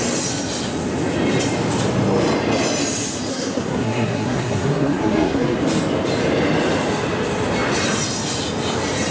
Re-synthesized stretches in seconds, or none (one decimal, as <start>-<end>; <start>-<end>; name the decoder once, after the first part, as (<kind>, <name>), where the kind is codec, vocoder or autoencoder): 3.3-5.6 (codec, SNAC)